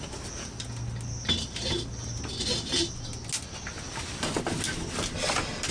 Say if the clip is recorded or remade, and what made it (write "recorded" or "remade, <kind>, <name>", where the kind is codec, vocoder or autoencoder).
recorded